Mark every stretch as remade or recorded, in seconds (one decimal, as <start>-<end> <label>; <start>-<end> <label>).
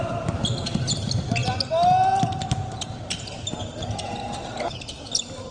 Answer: 0.0-5.5 recorded